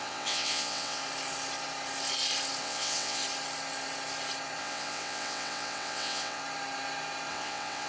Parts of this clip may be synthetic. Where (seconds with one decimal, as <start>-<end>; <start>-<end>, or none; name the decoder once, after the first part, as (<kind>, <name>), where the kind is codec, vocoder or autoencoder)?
0.0-1.0 (vocoder, WaveNeXt); 2.6-3.2; 4.6-6.4; 7.3-7.9